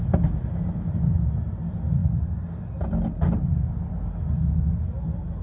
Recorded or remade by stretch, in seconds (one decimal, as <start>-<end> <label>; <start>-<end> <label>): 0.0-5.4 recorded